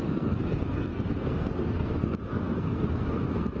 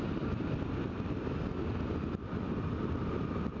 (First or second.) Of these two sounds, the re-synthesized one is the first